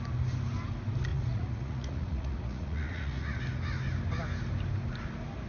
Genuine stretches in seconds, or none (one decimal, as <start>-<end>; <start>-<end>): 0.0-1.1; 3.4-5.5